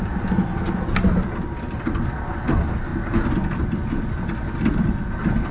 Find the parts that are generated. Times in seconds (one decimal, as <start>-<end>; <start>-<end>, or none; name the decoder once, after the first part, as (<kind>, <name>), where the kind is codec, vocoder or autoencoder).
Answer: none